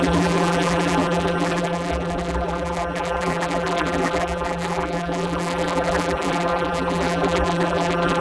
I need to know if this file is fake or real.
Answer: fake